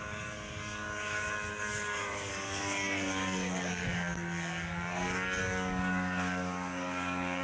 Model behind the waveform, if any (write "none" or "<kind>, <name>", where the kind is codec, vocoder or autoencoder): codec, DAC